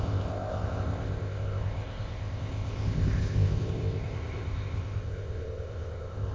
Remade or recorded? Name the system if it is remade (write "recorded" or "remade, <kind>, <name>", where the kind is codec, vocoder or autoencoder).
remade, codec, ZipCodec